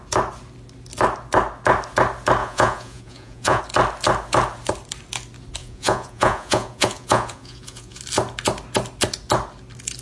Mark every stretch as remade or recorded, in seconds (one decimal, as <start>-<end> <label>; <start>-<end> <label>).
0.0-2.4 recorded; 2.4-3.6 remade; 3.6-5.6 recorded; 5.6-8.0 remade; 8.0-10.0 recorded